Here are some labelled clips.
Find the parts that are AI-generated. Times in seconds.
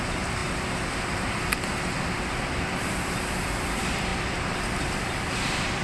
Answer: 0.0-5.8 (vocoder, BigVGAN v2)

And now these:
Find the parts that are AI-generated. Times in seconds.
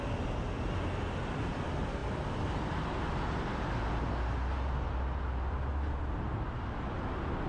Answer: none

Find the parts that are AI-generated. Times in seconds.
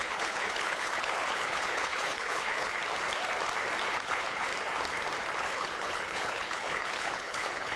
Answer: 0.0-2.8 (codec, HILCodec); 3.9-4.5; 5.4-7.8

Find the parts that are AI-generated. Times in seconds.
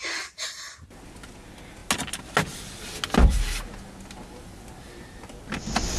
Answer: none